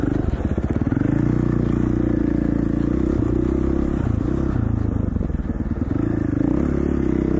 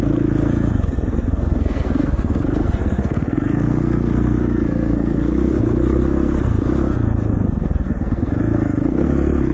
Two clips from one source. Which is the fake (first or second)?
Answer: second